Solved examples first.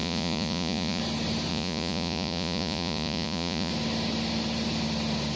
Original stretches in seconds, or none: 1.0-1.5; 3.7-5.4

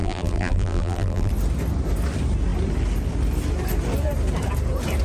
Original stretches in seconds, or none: 1.3-5.0

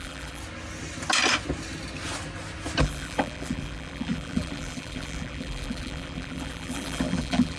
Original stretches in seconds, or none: 0.4-2.8

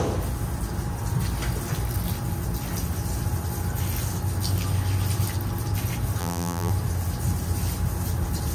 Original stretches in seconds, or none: 0.0-6.2; 6.7-8.5

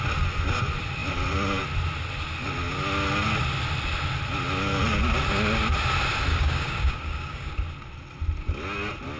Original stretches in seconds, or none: 0.0-6.3; 7.5-9.2

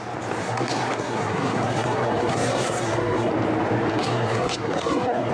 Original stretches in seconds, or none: 0.0-0.4; 3.3-3.9

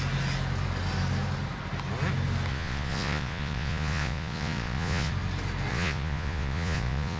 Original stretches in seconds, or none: 0.0-2.5; 5.1-5.7

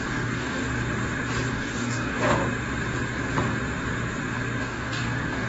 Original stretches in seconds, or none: 0.6-1.5; 2.4-4.6